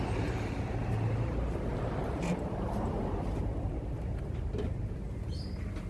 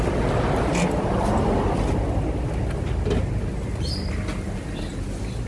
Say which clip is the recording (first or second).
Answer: second